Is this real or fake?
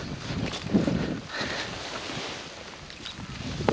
real